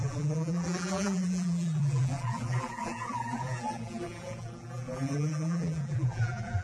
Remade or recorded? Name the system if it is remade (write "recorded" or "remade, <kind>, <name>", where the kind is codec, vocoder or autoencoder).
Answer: remade, vocoder, BigVGAN v2